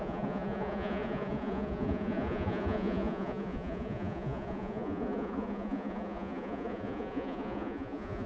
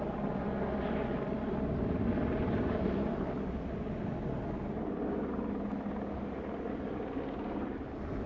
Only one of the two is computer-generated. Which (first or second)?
first